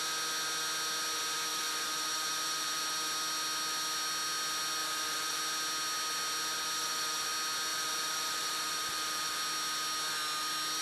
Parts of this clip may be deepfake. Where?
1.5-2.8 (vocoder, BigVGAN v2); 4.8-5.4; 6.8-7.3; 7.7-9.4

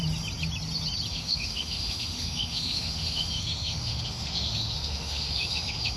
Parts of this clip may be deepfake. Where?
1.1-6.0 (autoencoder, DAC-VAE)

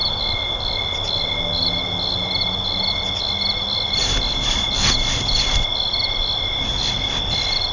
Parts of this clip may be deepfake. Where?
none

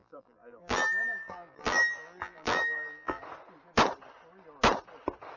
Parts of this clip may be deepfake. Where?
0.0-3.2 (vocoder, BigVGAN v2)

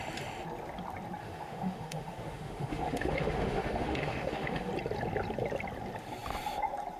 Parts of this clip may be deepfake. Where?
1.2-4.7 (autoencoder, DAC-VAE)